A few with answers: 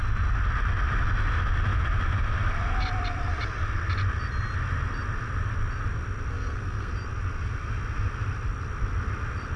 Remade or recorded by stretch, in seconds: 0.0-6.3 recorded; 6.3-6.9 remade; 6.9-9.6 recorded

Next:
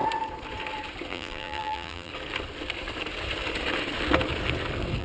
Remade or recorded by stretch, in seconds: 0.0-1.1 recorded; 1.1-2.1 remade; 2.1-5.0 recorded

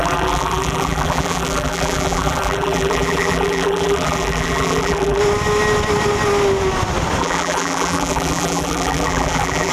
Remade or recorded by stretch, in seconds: 0.0-5.2 remade; 5.2-7.2 recorded; 7.2-9.7 remade

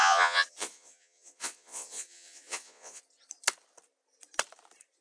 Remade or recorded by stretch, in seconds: 0.0-3.0 remade; 3.0-5.0 recorded

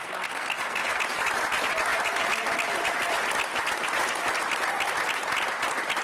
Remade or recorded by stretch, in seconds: 0.0-1.0 remade; 1.0-6.0 recorded

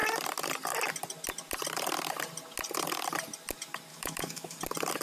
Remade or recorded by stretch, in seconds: 0.0-3.9 recorded; 3.9-4.6 remade; 4.6-5.0 recorded

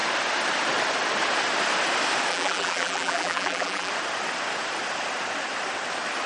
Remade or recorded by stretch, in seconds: 0.0-2.3 recorded; 2.3-3.9 remade; 3.9-6.3 recorded

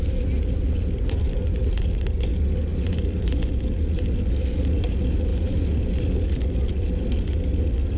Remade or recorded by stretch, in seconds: 0.0-8.0 recorded